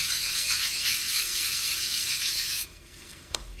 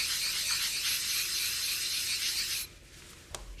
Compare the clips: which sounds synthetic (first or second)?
first